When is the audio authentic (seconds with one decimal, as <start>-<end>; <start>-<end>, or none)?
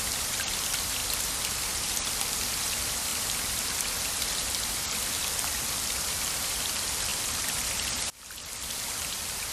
1.0-1.8; 3.1-5.3